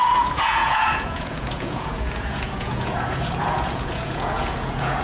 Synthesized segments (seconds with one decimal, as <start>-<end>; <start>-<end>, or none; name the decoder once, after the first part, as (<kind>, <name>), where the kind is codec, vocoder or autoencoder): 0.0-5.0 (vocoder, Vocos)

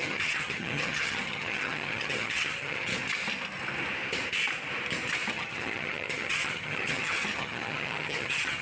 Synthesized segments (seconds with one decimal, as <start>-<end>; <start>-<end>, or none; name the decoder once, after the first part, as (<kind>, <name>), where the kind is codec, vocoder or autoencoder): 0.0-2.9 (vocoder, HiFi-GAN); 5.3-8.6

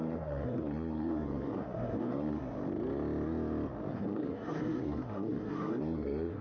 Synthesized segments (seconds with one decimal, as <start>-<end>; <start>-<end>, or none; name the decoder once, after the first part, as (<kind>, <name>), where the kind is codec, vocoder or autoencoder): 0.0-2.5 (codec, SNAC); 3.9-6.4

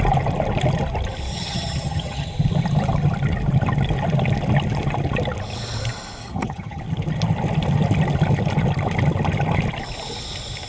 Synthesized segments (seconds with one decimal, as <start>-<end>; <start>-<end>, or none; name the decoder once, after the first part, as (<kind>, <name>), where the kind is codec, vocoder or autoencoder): 1.3-2.3 (vocoder, HiFi-GAN); 6.2-6.8